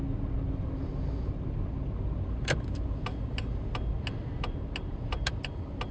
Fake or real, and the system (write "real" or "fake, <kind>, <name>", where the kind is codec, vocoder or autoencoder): real